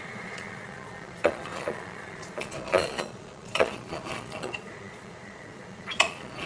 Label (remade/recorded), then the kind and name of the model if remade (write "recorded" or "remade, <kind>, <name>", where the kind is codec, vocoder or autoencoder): remade, vocoder, Vocos